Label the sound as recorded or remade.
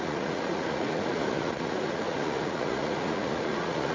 remade